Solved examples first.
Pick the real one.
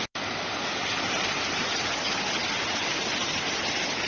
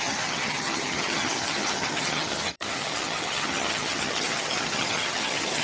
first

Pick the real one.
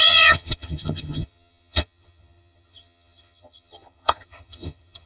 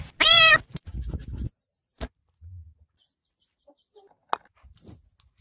second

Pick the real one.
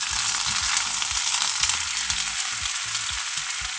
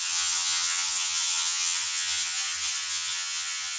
first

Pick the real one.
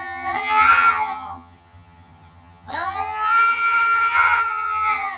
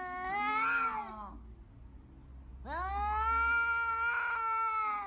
second